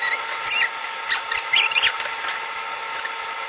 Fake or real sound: real